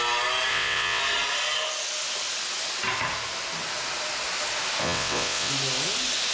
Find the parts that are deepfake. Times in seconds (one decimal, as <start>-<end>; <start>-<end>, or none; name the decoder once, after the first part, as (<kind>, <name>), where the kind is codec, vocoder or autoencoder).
0.5-1.0 (vocoder, WaveNeXt); 4.8-5.5